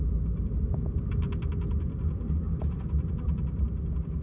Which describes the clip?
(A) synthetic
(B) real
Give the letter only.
B